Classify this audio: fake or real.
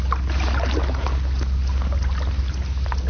real